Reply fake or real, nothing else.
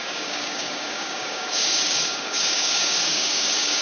fake